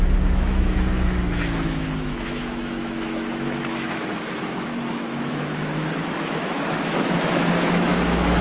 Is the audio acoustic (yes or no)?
no